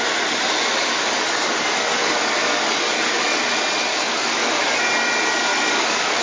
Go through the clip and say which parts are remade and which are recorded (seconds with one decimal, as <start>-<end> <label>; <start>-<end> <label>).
0.0-0.7 recorded; 0.7-3.4 remade; 3.4-3.9 recorded; 3.9-4.6 remade; 4.6-5.5 recorded; 5.5-6.2 remade